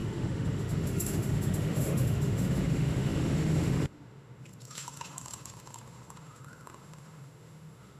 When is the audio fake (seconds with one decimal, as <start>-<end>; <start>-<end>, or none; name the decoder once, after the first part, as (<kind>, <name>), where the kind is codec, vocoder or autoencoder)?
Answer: 0.0-8.0 (autoencoder, DAC-VAE)